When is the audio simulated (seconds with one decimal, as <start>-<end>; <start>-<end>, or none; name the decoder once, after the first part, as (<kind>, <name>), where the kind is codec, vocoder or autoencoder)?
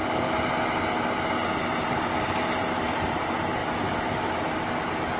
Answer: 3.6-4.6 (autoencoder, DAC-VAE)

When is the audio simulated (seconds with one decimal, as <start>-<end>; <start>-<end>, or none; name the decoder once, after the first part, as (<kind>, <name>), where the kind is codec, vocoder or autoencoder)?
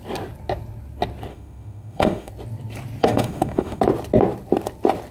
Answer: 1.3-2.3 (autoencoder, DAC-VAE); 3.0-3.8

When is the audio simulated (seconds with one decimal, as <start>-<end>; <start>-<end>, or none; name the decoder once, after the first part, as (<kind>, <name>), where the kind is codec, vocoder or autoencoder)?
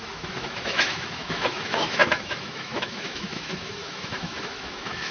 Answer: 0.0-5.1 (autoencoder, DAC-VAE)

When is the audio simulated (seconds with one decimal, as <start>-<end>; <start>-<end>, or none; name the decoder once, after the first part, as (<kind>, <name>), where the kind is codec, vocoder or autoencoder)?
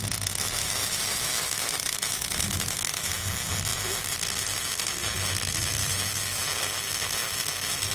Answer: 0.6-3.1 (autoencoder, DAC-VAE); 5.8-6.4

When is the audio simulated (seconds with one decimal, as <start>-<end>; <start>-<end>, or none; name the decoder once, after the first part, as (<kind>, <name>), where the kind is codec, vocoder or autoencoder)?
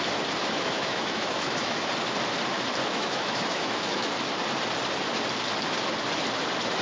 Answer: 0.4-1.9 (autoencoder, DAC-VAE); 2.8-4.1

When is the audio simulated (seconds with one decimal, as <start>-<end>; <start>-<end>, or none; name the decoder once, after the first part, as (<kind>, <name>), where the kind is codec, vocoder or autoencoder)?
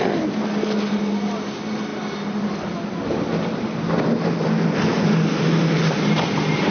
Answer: none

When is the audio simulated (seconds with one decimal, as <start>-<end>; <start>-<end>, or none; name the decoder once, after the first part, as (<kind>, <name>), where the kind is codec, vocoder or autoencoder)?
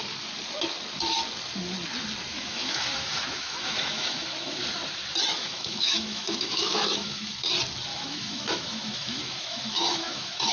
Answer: 2.3-4.6 (autoencoder, DAC-VAE); 5.3-7.3; 7.9-10.5